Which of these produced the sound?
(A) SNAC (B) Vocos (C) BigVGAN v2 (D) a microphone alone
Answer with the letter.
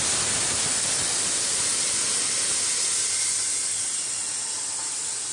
D